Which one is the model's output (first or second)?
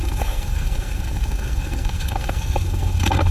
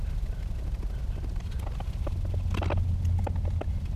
first